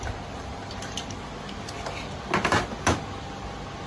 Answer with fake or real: real